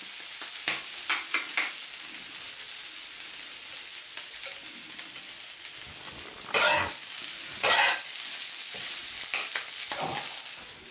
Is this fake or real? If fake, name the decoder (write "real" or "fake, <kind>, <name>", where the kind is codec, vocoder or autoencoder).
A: real